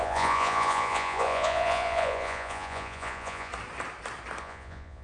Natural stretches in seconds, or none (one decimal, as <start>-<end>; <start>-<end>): 3.5-4.4